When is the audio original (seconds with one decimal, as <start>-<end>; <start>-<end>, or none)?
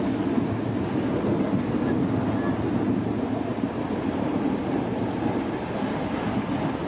0.0-3.5